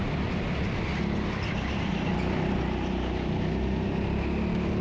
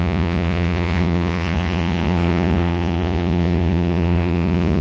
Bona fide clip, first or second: first